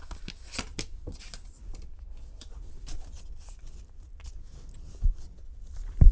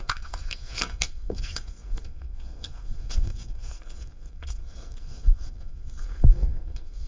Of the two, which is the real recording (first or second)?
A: first